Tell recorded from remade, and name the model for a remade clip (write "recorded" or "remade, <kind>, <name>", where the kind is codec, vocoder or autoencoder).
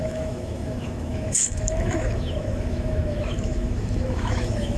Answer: remade, autoencoder, DAC-VAE